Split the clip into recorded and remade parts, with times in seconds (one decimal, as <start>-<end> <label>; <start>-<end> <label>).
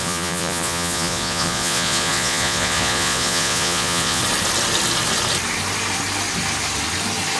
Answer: 0.0-4.2 remade; 4.2-7.4 recorded